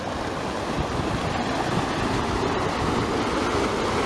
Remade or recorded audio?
recorded